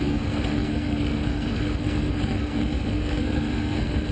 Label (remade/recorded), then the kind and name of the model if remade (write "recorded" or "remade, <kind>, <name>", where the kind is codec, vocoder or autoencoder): remade, codec, SNAC